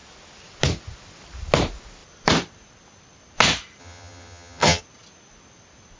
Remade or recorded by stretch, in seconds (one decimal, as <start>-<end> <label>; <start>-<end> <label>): 0.0-3.8 recorded; 3.8-4.8 remade; 4.8-6.0 recorded